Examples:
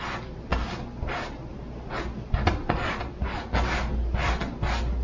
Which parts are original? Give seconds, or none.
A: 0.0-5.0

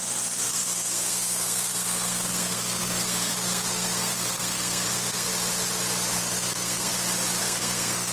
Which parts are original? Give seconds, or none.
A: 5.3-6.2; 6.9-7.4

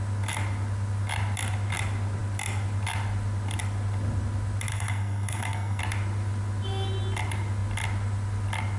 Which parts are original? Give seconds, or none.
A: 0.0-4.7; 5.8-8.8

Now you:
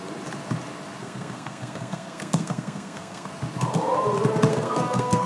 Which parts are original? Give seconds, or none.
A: 0.0-1.0; 3.3-4.5